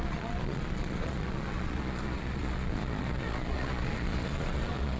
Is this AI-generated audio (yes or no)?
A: yes